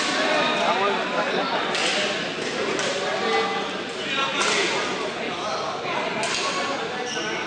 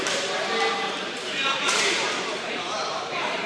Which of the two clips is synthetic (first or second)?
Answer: second